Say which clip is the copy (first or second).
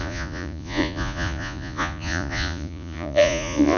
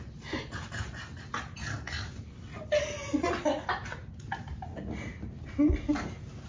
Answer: first